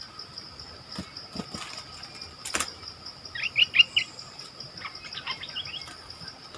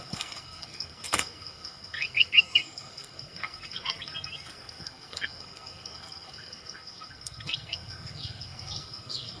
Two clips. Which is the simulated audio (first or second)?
second